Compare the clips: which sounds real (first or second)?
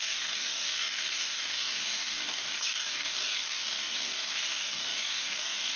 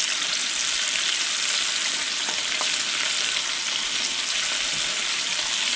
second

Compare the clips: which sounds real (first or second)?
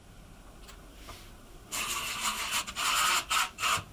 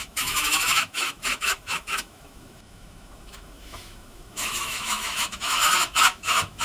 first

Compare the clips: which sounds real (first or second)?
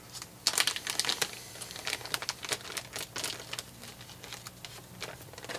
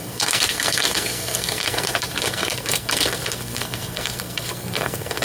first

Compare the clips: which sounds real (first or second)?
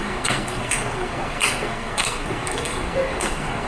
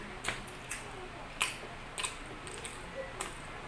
second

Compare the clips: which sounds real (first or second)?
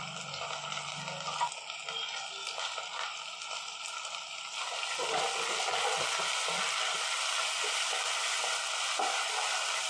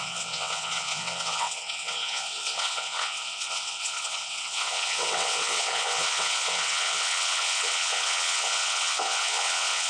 first